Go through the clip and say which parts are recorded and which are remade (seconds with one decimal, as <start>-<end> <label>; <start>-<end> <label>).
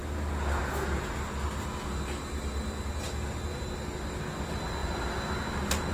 0.0-5.9 recorded